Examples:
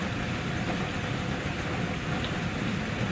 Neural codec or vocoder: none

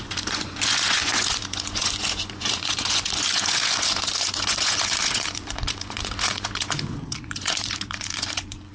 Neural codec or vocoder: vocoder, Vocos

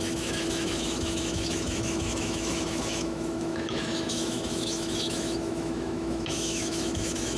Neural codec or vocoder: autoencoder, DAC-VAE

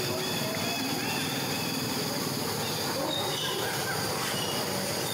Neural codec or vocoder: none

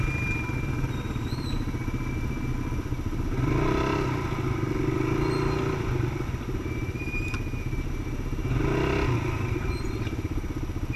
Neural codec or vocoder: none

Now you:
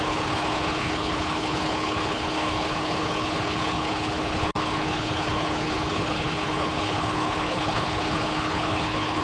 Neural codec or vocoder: codec, HILCodec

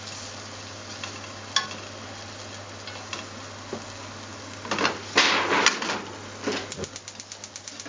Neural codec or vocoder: none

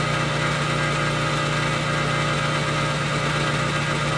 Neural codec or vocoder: none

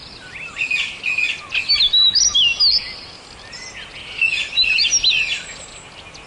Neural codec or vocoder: none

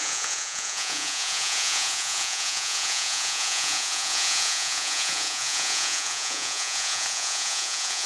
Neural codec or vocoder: vocoder, Vocos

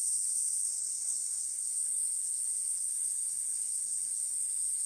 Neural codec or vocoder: codec, HILCodec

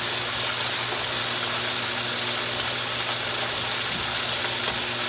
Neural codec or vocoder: none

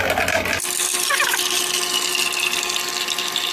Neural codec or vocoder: none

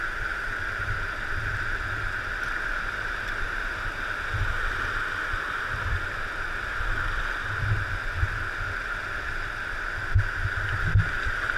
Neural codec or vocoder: none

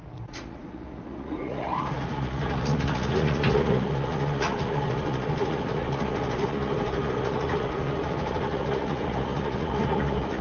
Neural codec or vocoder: vocoder, Vocos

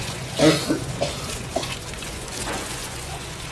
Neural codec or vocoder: vocoder, Vocos